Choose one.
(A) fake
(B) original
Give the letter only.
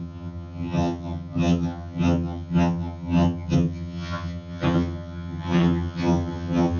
A